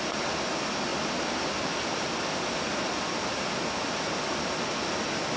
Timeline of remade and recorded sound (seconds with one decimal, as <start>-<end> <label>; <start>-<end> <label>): 0.0-5.4 recorded